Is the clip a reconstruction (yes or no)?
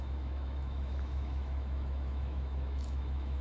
yes